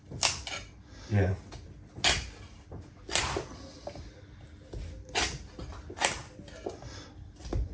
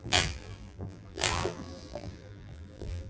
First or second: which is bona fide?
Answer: first